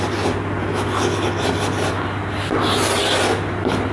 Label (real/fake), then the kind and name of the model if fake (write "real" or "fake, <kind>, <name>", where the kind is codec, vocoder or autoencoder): real